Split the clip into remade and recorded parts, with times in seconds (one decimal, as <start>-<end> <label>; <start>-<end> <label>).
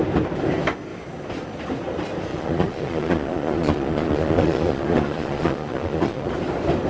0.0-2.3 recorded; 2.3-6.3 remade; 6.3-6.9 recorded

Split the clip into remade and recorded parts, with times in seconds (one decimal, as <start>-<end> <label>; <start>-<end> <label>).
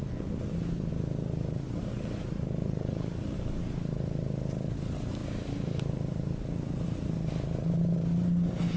0.0-2.6 recorded; 2.6-3.1 remade; 3.1-8.8 recorded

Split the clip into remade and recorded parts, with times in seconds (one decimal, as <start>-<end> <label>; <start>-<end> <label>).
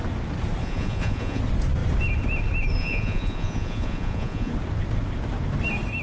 0.0-0.6 recorded; 0.6-1.4 remade; 1.4-2.8 recorded; 2.8-4.5 remade; 4.5-6.0 recorded